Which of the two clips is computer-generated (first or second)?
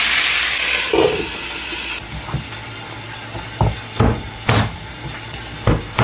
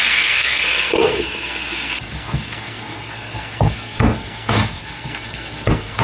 second